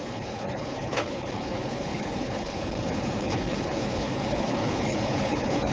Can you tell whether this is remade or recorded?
remade